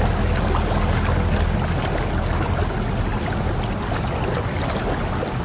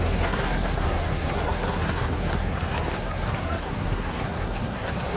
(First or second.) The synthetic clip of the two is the second